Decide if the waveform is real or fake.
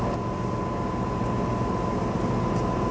real